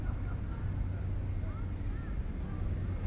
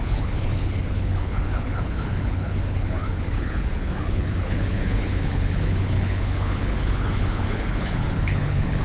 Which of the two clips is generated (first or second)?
second